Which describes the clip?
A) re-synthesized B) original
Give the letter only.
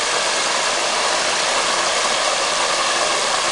B